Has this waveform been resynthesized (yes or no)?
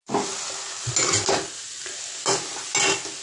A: no